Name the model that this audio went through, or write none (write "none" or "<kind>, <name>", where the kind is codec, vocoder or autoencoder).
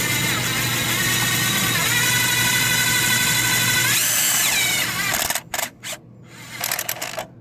none